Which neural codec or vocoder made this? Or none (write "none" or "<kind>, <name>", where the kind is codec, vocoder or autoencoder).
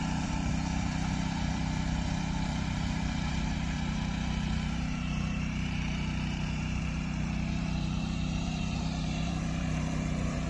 vocoder, BigVGAN v2